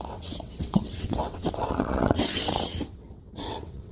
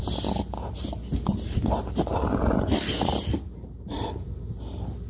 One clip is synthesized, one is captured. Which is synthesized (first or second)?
first